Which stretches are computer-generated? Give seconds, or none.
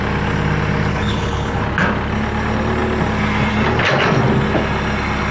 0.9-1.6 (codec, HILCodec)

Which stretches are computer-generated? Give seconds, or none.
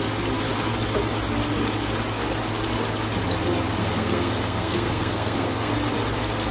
3.8-5.7 (codec, SNAC)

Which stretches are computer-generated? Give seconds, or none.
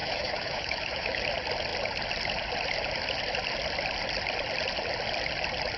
0.0-1.2 (autoencoder, DAC-VAE)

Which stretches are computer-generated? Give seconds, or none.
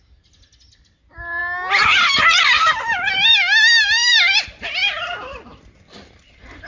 none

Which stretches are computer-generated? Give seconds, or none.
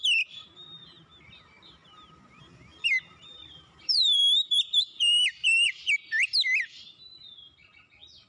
2.7-5.7 (vocoder, BigVGAN v2)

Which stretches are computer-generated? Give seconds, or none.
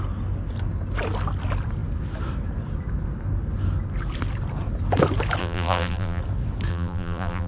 5.4-6.2 (vocoder, BigVGAN v2); 6.7-7.5